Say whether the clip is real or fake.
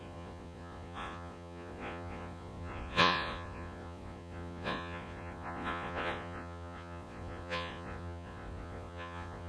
fake